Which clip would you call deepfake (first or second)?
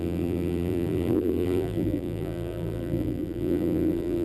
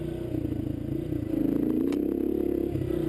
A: first